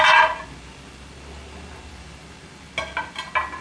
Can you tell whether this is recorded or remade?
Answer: recorded